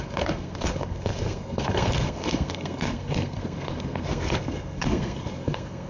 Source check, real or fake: fake